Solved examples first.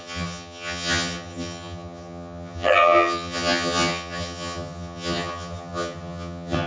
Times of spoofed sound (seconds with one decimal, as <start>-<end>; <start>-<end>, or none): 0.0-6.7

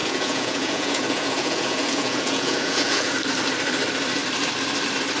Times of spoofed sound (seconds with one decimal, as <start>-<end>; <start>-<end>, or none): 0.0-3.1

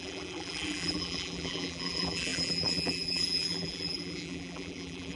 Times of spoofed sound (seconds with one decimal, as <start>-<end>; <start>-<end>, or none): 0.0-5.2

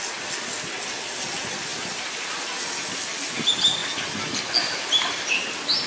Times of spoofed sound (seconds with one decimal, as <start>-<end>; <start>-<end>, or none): none